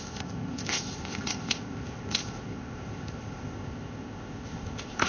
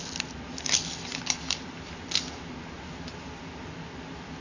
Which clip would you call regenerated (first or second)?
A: first